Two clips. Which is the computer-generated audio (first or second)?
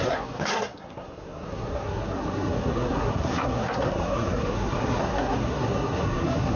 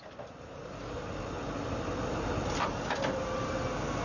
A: first